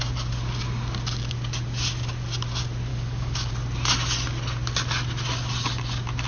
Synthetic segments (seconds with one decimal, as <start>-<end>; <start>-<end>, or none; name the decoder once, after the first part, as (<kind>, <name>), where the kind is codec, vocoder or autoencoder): 2.9-3.5 (codec, DAC)